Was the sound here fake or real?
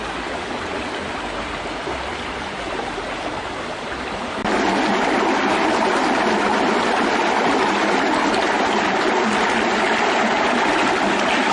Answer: real